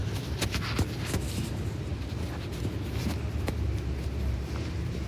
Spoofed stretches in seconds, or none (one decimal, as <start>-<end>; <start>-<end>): 1.4-1.9; 3.5-5.1